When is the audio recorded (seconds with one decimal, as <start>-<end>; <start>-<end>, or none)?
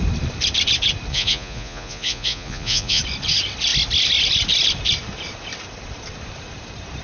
0.0-1.1; 3.0-7.0